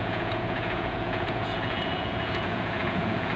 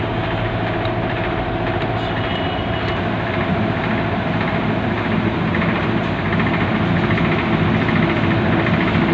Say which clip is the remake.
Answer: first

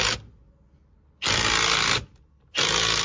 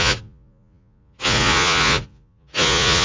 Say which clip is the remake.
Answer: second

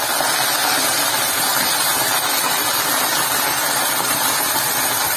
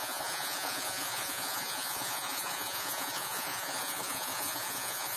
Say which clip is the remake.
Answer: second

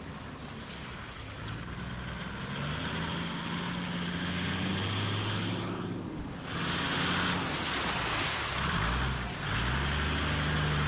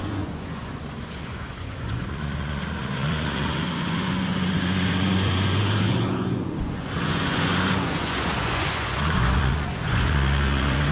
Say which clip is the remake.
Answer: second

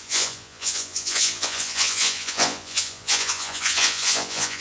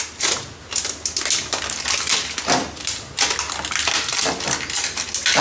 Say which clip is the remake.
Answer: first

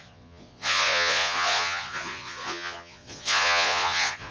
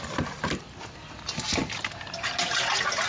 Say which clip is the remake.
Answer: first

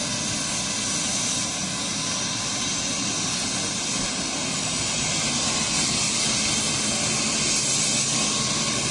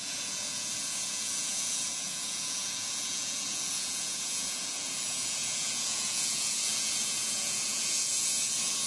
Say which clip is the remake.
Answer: second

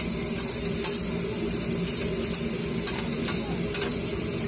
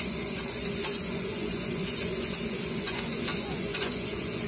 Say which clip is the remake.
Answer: second